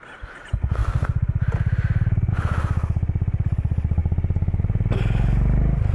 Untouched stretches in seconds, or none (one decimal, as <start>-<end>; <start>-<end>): 0.0-0.8; 2.3-5.9